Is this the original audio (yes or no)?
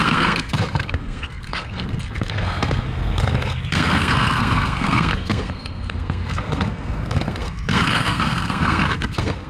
no